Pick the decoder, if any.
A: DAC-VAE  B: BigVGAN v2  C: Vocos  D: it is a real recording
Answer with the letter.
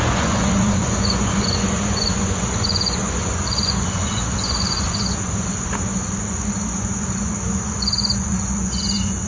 C